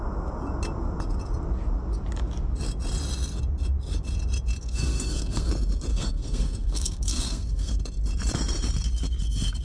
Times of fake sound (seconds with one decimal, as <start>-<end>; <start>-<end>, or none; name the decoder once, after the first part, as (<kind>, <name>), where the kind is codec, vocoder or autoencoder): 4.6-5.5 (codec, SNAC); 5.9-7.8